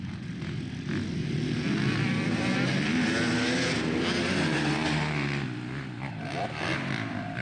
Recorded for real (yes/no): yes